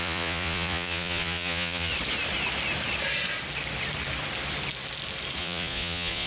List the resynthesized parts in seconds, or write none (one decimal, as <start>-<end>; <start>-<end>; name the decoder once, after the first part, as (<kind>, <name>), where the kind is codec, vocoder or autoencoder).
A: 0.0-1.9 (vocoder, Vocos); 5.4-6.3